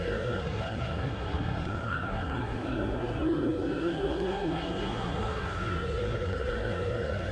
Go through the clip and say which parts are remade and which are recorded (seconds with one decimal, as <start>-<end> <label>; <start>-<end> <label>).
0.0-7.3 remade